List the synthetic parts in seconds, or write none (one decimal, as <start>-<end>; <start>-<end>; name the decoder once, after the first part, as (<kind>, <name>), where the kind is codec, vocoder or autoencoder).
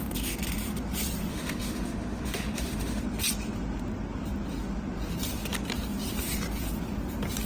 1.3-3.0 (autoencoder, DAC-VAE)